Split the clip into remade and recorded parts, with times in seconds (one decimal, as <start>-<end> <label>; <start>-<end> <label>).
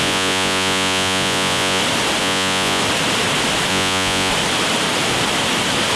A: 0.0-1.8 remade; 1.8-2.2 recorded; 2.2-2.8 remade; 2.8-3.7 recorded; 3.7-4.3 remade; 4.3-6.0 recorded